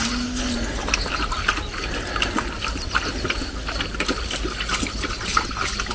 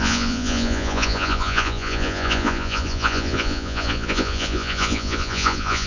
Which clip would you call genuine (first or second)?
first